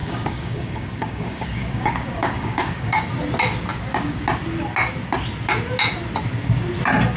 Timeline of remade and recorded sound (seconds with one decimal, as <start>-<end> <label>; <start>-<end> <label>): 0.0-3.0 remade; 3.0-3.7 recorded; 3.7-4.2 remade; 4.2-7.2 recorded

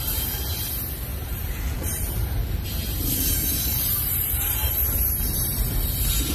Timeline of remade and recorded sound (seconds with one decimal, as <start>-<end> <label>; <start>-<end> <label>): 0.0-1.1 recorded; 1.1-4.8 remade; 4.8-6.3 recorded

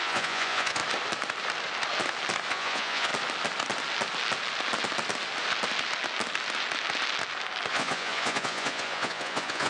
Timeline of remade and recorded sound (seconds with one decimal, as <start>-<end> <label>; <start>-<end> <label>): 0.0-0.8 remade; 0.8-2.5 recorded; 2.5-3.1 remade; 3.1-7.7 recorded; 7.7-9.7 remade

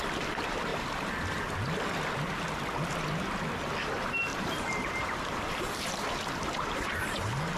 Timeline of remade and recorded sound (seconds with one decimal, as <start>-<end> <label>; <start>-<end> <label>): 0.0-4.3 recorded; 4.3-6.9 remade; 6.9-7.6 recorded

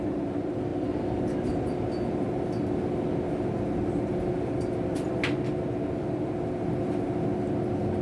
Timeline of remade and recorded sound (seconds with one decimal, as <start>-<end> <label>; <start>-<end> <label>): 0.0-8.0 recorded

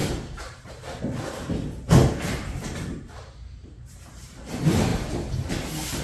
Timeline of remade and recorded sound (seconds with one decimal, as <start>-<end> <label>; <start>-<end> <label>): 0.0-1.0 remade; 1.0-2.0 recorded; 2.0-4.4 remade; 4.4-4.9 recorded; 4.9-5.5 remade; 5.5-6.0 recorded